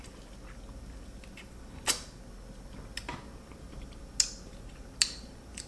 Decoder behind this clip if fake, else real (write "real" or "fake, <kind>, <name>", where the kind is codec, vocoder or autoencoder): real